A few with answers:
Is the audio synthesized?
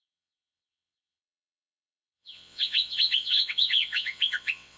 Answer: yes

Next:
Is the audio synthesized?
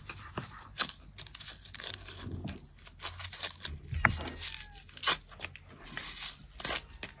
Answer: no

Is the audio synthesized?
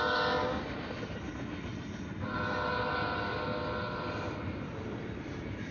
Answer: no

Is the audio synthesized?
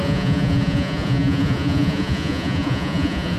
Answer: yes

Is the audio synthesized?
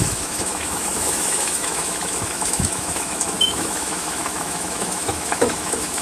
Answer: yes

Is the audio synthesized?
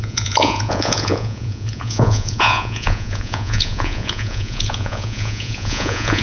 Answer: yes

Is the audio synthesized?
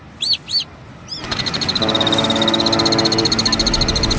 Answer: no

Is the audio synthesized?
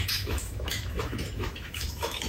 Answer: yes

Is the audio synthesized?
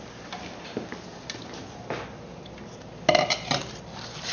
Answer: no